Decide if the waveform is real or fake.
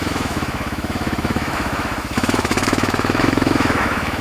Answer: fake